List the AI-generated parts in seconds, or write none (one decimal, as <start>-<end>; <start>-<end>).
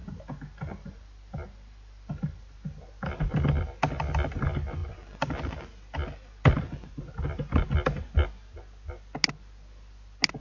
0.0-2.4; 4.8-5.5; 6.0-6.8